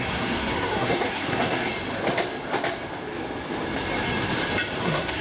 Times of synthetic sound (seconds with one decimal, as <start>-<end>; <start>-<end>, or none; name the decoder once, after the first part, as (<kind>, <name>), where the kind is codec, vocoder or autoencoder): 0.0-1.7 (codec, SNAC); 4.8-5.2